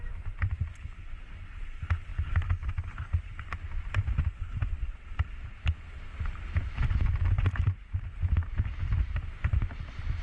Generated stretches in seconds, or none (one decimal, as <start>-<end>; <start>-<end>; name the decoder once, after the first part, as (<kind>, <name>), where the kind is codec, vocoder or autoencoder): none